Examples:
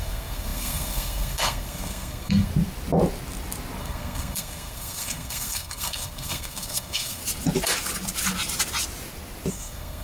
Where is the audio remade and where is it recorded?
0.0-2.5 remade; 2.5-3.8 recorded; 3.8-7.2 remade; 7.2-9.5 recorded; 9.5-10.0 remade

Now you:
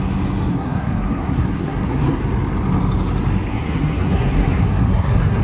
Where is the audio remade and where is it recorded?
0.0-0.5 recorded; 0.5-2.2 remade; 2.2-3.5 recorded; 3.5-5.4 remade

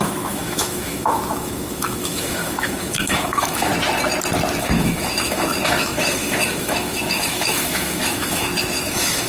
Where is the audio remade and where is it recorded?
0.0-3.7 remade; 3.7-4.6 recorded; 4.6-9.3 remade

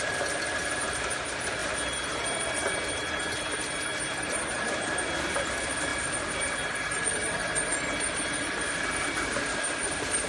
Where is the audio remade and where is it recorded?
0.0-10.3 recorded

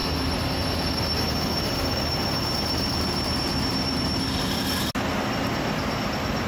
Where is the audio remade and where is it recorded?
0.0-6.5 recorded

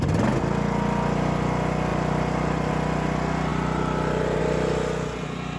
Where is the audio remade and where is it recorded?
0.0-1.9 recorded; 1.9-2.7 remade; 2.7-3.5 recorded; 3.5-4.4 remade; 4.4-5.6 recorded

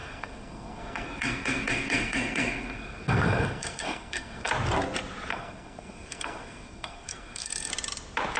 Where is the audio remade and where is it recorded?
0.0-4.5 remade; 4.5-5.3 recorded; 5.3-7.7 remade; 7.7-8.4 recorded

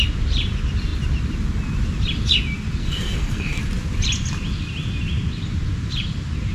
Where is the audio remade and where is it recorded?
0.0-2.8 recorded; 2.8-3.6 remade; 3.6-6.5 recorded